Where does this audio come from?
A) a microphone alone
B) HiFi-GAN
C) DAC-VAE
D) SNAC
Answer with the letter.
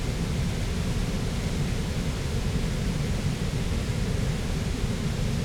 A